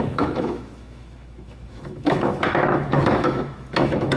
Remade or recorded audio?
remade